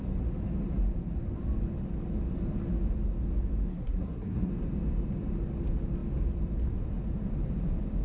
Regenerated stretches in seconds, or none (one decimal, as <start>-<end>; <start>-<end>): 3.7-4.5